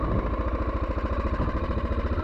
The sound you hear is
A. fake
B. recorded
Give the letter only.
B